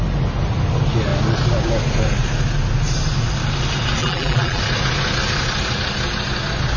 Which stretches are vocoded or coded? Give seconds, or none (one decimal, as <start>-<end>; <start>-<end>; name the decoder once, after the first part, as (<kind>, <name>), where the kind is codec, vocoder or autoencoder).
4.0-4.6 (vocoder, BigVGAN v2)